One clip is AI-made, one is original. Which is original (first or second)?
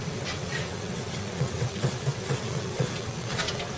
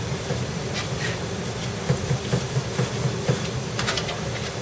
second